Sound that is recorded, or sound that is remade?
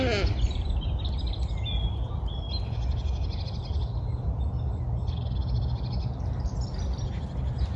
recorded